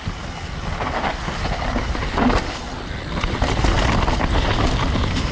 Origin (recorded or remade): recorded